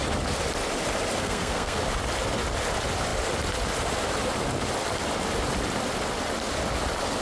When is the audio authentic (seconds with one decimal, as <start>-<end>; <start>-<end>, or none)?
0.0-1.2; 1.8-7.2